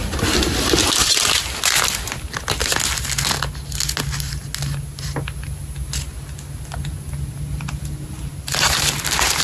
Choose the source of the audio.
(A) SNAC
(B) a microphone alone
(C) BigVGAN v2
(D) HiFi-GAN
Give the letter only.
B